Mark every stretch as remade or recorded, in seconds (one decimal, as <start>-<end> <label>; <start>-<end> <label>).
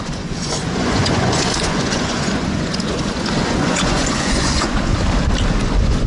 0.0-4.9 remade; 4.9-5.6 recorded; 5.6-6.1 remade